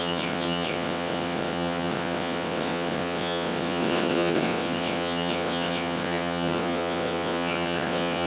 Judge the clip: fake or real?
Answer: fake